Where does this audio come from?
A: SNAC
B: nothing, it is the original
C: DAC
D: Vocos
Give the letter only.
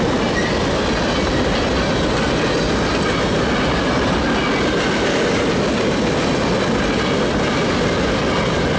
B